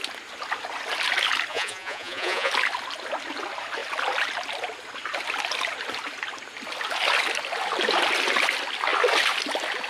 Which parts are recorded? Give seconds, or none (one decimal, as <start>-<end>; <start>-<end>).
0.0-1.5; 2.5-9.9